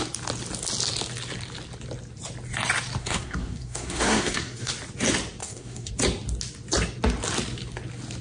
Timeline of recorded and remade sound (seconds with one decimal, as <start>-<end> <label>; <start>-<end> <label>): 0.0-3.0 recorded; 3.0-4.7 remade; 4.7-5.4 recorded; 5.4-5.9 remade; 5.9-8.2 recorded